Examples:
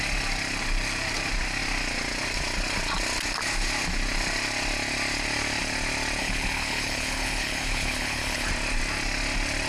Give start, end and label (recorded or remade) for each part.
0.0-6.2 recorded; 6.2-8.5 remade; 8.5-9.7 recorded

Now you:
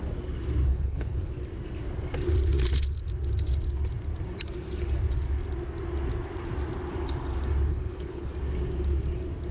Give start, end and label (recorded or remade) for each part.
0.0-0.7 recorded; 0.7-1.3 remade; 1.3-7.7 recorded; 7.7-8.3 remade; 8.3-9.5 recorded

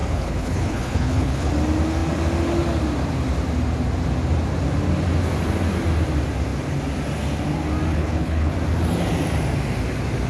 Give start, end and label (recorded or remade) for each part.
0.0-1.5 remade; 1.5-7.9 recorded; 7.9-8.5 remade; 8.5-10.3 recorded

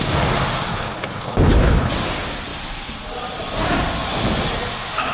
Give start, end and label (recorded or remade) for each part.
0.0-0.7 recorded; 0.7-1.9 remade; 1.9-5.1 recorded

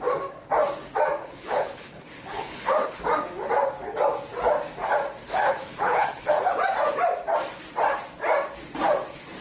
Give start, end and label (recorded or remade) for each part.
0.0-1.2 recorded; 1.2-3.0 remade; 3.0-5.2 recorded; 5.2-6.4 remade; 6.4-9.4 recorded